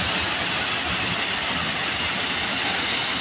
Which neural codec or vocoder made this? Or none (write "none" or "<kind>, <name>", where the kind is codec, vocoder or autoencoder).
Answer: none